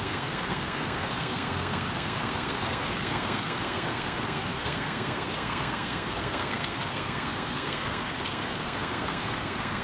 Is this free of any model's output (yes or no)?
no